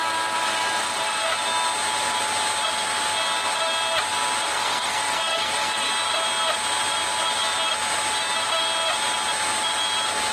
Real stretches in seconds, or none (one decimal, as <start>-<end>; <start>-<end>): 0.0-4.5; 5.9-10.3